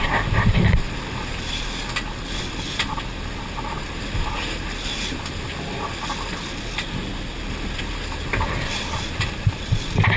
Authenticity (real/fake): real